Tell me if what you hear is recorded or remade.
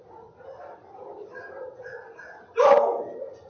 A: recorded